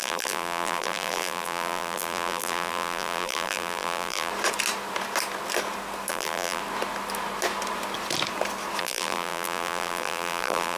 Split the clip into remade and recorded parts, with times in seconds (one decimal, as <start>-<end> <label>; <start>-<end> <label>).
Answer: 0.0-4.3 remade; 4.3-6.1 recorded; 6.1-6.6 remade; 6.6-8.8 recorded; 8.8-10.8 remade